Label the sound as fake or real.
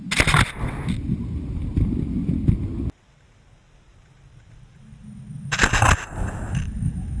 real